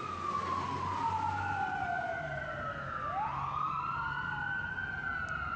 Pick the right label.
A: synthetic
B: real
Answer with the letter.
B